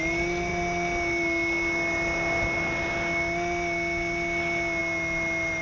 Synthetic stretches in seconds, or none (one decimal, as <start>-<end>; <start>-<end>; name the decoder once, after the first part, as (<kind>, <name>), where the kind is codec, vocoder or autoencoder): none